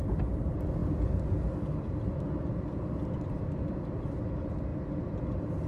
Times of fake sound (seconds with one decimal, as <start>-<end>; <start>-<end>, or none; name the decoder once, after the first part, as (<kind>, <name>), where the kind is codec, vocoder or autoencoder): none